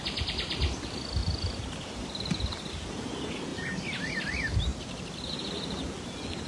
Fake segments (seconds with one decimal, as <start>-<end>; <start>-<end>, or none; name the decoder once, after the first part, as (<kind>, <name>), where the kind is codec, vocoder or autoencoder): 1.2-2.3 (vocoder, BigVGAN v2); 3.5-4.2